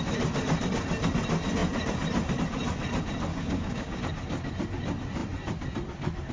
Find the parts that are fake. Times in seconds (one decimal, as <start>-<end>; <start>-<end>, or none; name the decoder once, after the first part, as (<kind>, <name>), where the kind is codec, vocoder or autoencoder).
3.3-4.0 (codec, DAC)